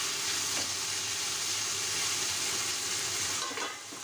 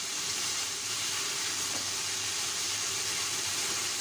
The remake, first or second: second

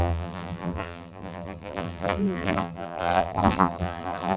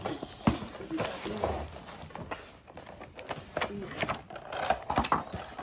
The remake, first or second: first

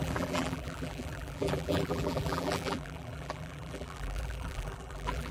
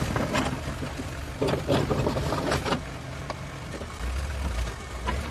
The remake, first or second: first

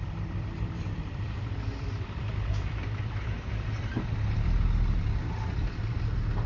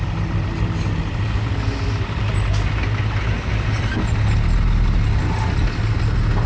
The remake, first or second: first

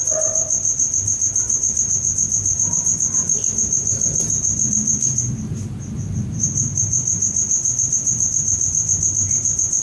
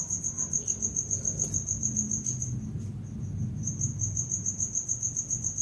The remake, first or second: first